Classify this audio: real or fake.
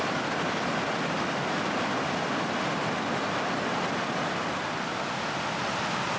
real